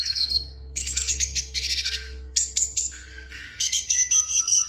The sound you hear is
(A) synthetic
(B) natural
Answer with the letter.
A